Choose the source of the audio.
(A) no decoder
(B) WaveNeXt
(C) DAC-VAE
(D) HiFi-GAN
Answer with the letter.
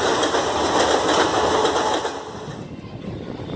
A